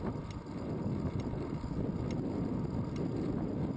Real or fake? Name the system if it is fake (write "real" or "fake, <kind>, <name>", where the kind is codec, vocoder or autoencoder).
real